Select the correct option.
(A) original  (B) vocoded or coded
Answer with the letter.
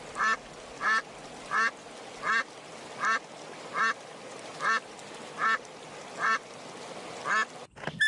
A